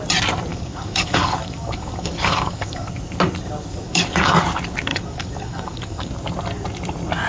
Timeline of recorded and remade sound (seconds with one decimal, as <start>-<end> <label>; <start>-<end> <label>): 0.0-0.5 recorded; 0.5-2.9 remade; 2.9-3.7 recorded; 3.7-4.4 remade; 4.4-4.9 recorded; 4.9-6.1 remade; 6.1-7.3 recorded